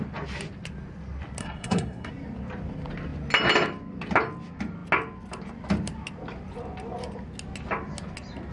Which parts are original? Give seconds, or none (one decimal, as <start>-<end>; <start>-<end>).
0.0-1.4; 2.1-8.5